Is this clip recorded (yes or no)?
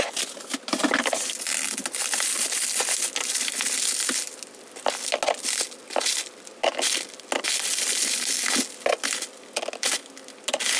yes